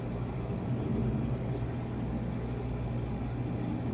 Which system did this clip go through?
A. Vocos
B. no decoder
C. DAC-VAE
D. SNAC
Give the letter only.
B